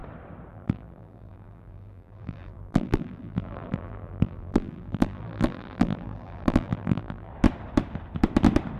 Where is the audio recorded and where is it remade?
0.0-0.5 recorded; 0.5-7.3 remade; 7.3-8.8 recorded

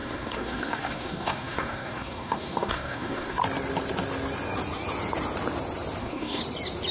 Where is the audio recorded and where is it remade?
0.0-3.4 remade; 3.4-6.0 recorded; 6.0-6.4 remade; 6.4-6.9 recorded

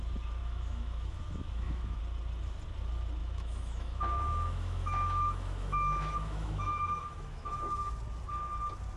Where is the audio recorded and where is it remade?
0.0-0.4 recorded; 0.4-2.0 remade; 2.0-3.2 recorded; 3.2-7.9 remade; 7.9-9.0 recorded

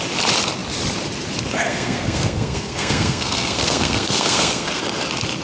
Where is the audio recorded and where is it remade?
0.0-1.6 recorded; 1.6-4.8 remade; 4.8-5.4 recorded

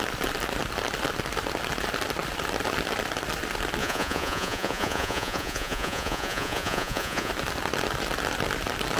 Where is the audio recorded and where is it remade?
0.0-3.8 recorded; 3.8-7.3 remade; 7.3-9.0 recorded

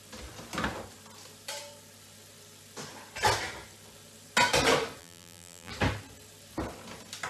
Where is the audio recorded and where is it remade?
0.0-5.0 recorded; 5.0-5.7 remade; 5.7-7.3 recorded

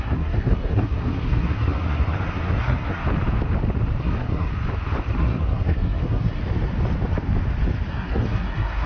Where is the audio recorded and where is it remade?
0.0-3.0 remade; 3.0-4.0 recorded; 4.0-4.5 remade; 4.5-5.2 recorded; 5.2-6.4 remade; 6.4-7.9 recorded; 7.9-8.9 remade